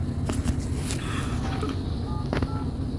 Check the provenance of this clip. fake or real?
real